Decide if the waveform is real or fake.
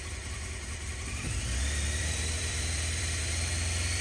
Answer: fake